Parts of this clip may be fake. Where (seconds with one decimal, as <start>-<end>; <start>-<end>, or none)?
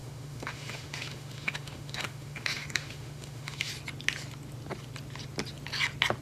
0.0-3.7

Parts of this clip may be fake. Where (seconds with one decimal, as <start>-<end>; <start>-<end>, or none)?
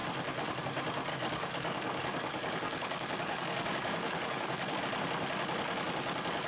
1.1-4.8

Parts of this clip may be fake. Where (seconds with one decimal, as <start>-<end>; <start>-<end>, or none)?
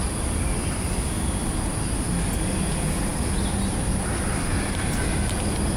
none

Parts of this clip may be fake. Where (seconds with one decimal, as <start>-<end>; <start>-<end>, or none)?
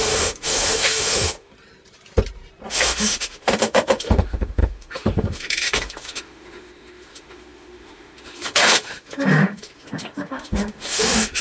0.0-1.5; 2.7-11.4